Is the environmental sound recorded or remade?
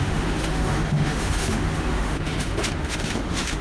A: remade